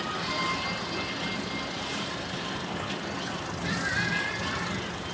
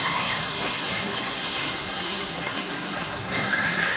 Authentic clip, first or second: first